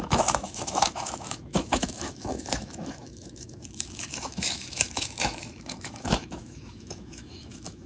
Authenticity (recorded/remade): remade